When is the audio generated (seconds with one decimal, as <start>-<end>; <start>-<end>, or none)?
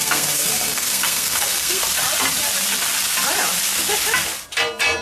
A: 0.0-1.8